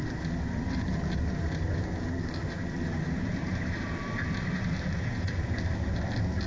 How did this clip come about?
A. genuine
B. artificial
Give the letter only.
A